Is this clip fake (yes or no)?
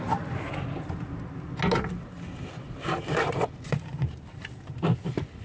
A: no